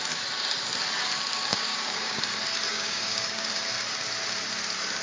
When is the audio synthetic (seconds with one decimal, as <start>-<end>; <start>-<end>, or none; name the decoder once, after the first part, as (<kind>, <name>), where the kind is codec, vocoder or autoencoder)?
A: 1.5-2.2 (codec, DAC); 2.7-3.6